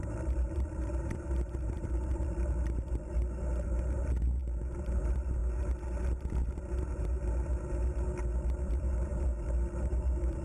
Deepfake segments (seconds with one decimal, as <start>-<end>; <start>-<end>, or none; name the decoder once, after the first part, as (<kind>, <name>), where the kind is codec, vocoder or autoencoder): 0.0-5.4 (vocoder, BigVGAN v2); 6.5-7.5; 8.7-9.1; 9.8-10.4